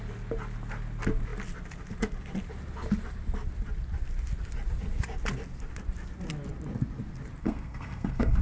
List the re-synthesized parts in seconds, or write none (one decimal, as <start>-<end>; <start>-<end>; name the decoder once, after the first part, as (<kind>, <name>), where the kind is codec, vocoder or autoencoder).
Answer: 7.4-8.4 (codec, SNAC)